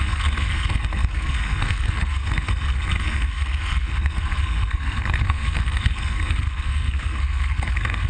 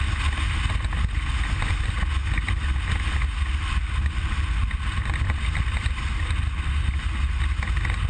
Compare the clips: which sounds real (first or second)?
second